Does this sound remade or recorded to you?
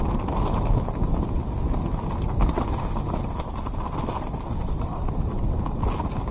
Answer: recorded